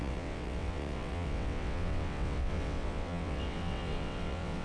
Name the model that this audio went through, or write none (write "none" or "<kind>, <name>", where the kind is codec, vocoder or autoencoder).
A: vocoder, WaveNeXt